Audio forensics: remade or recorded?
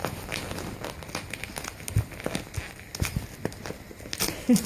recorded